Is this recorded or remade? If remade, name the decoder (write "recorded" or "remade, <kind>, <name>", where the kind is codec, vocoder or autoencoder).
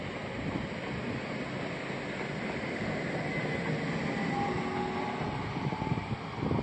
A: recorded